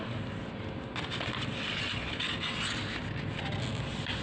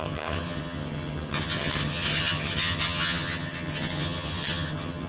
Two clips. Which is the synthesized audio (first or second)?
second